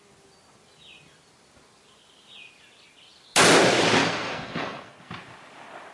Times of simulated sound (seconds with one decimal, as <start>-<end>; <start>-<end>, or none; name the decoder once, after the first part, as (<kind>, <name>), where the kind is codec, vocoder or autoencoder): 4.0-5.1 (codec, SNAC)